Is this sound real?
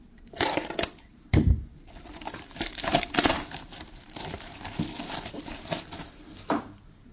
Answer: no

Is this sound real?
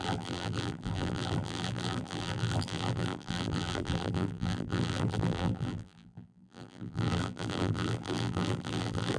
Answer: no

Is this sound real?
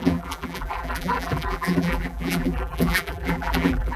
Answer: no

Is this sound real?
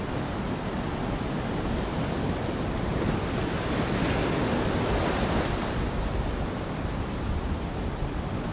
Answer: yes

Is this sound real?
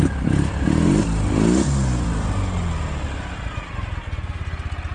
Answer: yes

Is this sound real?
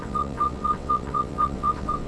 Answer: no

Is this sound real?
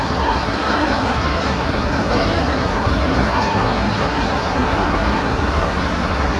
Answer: no